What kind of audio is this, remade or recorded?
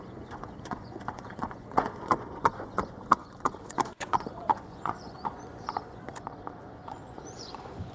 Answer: remade